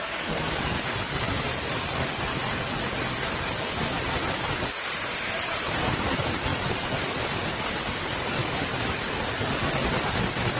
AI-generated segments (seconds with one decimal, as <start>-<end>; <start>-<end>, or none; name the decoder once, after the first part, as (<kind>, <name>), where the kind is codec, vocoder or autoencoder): none